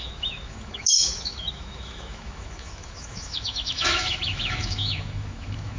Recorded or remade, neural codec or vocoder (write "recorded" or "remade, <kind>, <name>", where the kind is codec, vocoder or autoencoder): remade, autoencoder, DAC-VAE